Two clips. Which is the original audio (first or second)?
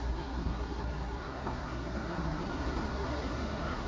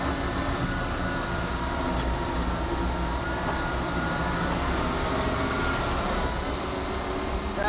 second